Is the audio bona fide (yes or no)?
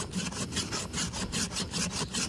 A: yes